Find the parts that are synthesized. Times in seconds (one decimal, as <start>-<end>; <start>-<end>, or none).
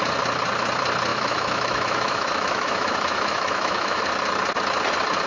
1.1-4.0